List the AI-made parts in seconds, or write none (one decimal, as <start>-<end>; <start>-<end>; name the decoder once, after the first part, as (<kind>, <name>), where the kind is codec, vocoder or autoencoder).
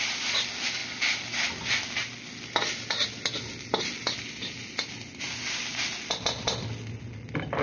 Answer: none